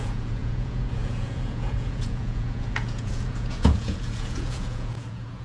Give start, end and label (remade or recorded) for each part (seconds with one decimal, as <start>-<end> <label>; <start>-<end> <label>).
0.0-5.4 remade